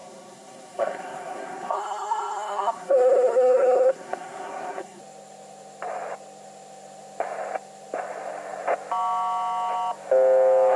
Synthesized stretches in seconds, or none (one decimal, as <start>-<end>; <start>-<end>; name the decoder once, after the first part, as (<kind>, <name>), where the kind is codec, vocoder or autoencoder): 0.0-5.0 (codec, SNAC)